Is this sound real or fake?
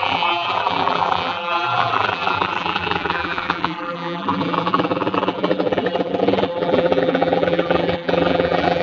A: fake